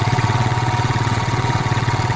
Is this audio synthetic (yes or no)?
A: yes